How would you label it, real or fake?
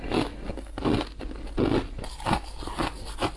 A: real